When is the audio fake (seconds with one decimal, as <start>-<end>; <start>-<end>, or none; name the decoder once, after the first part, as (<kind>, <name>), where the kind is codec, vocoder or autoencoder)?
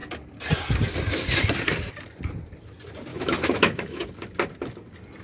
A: 3.1-4.1 (autoencoder, DAC-VAE)